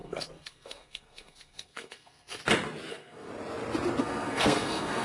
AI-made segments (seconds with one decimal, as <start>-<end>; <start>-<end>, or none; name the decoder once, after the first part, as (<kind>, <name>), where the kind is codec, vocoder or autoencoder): 0.0-2.4 (codec, SNAC); 2.9-3.3; 4.0-5.0